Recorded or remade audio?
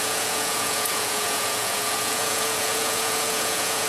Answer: remade